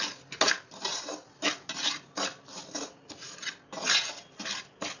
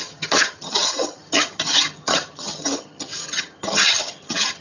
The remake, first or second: second